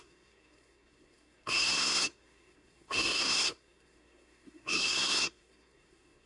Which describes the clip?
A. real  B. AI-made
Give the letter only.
B